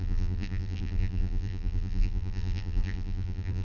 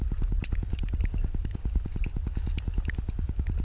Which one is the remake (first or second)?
first